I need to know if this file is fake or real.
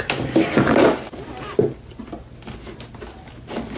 real